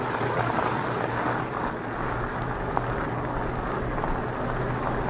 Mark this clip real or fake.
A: real